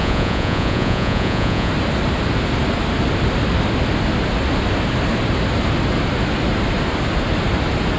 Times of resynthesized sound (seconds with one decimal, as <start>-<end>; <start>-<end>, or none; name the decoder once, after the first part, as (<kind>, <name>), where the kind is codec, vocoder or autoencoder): 0.0-1.7 (vocoder, Vocos)